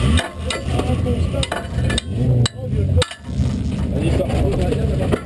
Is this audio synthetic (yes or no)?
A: no